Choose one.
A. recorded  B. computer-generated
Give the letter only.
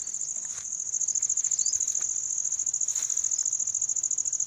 A